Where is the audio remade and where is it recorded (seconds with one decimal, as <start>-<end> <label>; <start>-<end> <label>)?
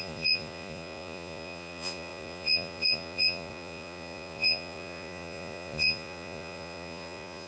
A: 0.0-7.5 remade